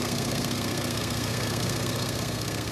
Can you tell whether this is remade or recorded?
remade